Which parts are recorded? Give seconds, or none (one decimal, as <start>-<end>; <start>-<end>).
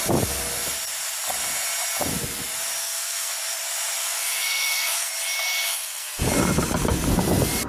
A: 0.0-2.8; 3.3-4.0; 5.1-5.7; 6.2-7.7